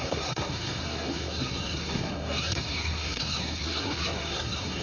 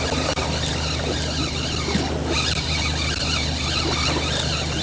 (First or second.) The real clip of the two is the second